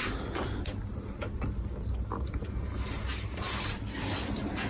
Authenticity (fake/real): real